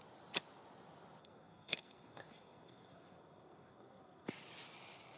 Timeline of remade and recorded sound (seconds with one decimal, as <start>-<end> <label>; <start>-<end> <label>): 0.0-1.2 recorded; 1.2-4.3 remade; 4.3-5.2 recorded